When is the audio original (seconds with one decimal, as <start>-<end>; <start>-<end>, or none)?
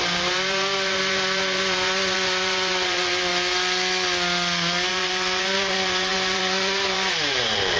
3.3-4.9